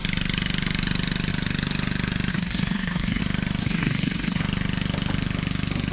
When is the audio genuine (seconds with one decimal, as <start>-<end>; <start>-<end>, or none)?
0.0-2.3; 3.2-3.6; 4.4-5.9

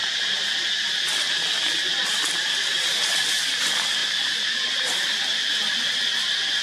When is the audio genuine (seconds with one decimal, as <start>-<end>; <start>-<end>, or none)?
0.7-2.4; 3.6-6.6